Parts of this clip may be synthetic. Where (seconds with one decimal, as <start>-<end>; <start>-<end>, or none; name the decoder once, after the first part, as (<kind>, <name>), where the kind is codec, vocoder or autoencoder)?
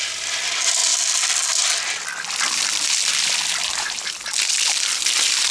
none